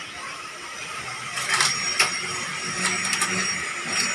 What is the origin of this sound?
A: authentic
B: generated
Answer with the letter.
B